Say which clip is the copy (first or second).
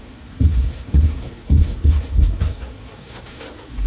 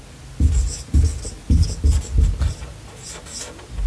first